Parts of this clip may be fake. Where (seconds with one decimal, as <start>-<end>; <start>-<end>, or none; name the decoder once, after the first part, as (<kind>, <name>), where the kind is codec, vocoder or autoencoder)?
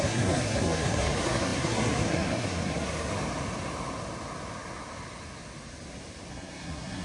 0.0-3.1 (codec, SNAC); 6.3-7.0